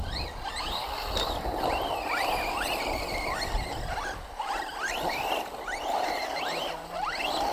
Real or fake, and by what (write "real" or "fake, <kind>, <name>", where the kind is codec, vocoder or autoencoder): real